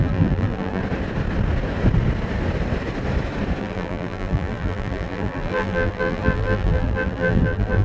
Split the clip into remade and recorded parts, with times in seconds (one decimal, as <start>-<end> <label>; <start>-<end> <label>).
0.0-0.8 remade; 0.8-3.6 recorded; 3.6-7.8 remade